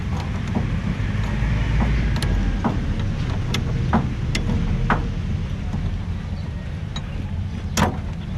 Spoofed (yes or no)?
no